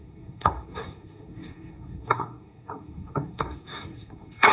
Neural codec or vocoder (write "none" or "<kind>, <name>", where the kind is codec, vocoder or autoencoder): codec, SNAC